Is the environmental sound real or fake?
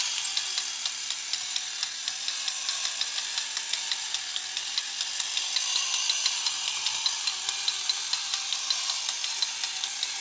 real